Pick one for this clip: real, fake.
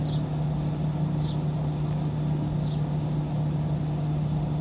real